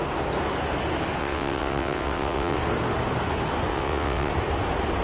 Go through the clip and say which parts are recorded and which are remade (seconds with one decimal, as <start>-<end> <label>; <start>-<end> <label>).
0.0-1.2 recorded; 1.2-2.6 remade; 2.6-3.7 recorded; 3.7-4.3 remade; 4.3-5.0 recorded